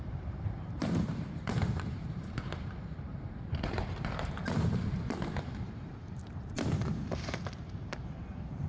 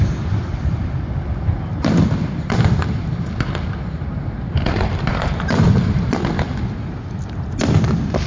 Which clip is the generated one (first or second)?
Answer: first